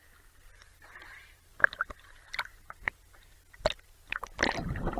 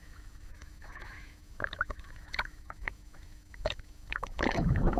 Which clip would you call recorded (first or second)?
first